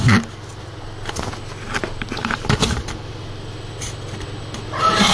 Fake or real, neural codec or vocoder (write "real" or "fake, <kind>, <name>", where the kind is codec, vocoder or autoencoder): real